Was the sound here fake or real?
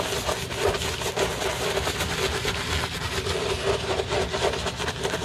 real